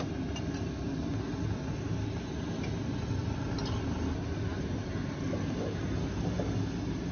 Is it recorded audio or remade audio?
recorded